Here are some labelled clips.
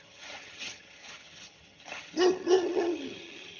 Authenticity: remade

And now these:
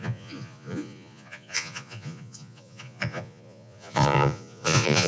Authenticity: remade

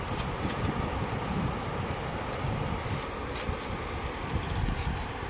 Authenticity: recorded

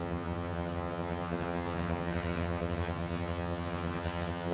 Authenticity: remade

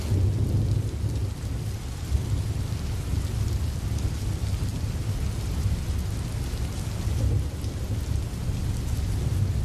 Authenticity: recorded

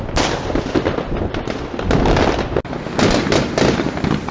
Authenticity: recorded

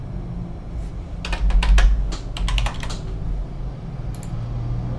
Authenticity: recorded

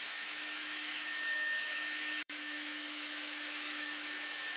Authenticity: remade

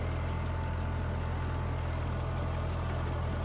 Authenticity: recorded